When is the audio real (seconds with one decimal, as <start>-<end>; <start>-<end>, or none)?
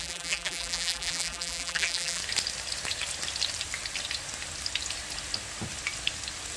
2.2-6.6